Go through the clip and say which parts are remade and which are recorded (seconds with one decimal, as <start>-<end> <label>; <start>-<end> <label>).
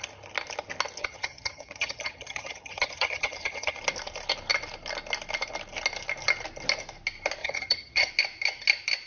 0.0-1.0 recorded; 1.0-3.8 remade; 3.8-7.4 recorded; 7.4-8.1 remade; 8.1-9.1 recorded